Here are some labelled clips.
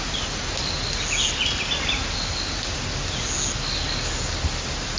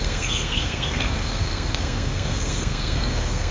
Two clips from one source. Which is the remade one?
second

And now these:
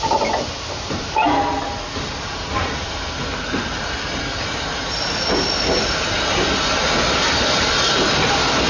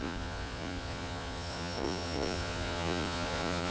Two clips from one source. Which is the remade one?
second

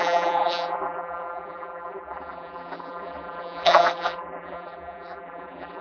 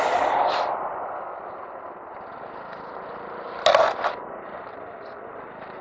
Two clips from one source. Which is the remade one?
first